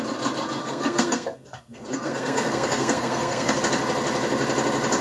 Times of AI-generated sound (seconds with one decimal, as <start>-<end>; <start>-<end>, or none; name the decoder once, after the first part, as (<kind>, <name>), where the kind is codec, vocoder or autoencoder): 0.6-3.6 (codec, SNAC)